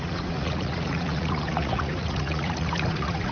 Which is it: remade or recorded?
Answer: remade